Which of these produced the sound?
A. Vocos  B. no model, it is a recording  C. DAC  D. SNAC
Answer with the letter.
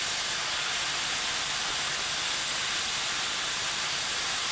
B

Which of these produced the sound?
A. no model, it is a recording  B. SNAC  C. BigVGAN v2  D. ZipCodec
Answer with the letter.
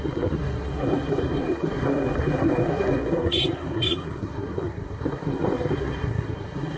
B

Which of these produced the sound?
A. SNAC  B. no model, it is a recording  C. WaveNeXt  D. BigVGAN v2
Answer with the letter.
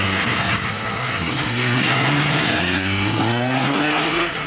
A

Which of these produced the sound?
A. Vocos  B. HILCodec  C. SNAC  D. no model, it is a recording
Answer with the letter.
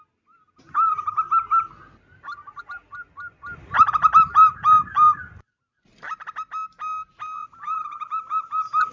D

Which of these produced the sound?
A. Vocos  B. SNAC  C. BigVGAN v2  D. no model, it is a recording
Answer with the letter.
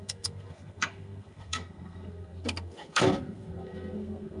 B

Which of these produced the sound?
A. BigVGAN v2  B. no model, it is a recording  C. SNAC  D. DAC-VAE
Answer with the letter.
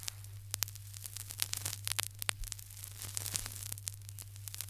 B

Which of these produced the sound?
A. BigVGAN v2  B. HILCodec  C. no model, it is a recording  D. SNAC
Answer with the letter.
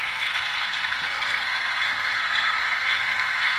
D